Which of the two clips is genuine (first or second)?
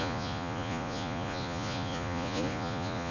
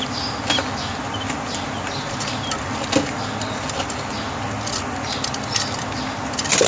second